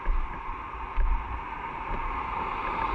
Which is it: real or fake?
real